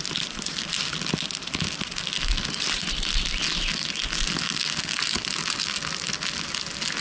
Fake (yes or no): no